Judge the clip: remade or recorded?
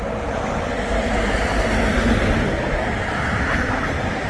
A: recorded